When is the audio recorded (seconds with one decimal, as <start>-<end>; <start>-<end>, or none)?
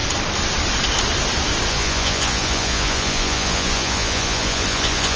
0.0-1.7